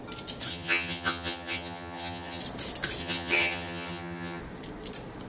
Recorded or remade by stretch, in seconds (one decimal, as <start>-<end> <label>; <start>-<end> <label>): 0.0-0.5 recorded; 0.5-2.4 remade; 2.4-3.0 recorded; 3.0-4.4 remade; 4.4-5.3 recorded